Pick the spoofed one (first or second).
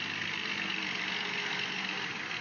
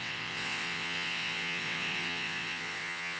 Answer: second